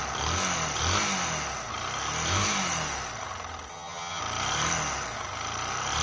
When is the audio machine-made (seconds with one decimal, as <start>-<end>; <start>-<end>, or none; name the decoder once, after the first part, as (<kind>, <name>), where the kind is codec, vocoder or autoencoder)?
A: 3.7-4.2 (vocoder, HiFi-GAN)